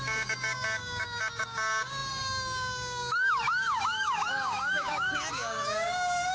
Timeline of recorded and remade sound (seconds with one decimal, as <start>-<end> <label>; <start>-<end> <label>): 0.0-6.3 remade